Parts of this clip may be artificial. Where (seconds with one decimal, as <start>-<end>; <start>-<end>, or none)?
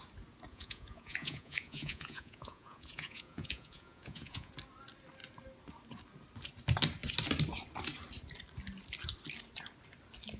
0.5-4.5